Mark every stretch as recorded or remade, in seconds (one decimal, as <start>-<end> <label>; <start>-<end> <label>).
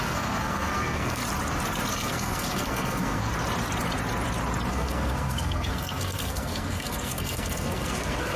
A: 0.0-1.2 remade; 1.2-1.9 recorded; 1.9-3.3 remade; 3.3-4.7 recorded; 4.7-8.4 remade